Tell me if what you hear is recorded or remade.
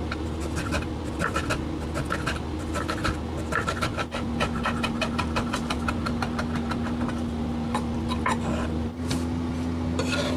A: recorded